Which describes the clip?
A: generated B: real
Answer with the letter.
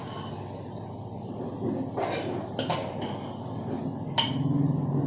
B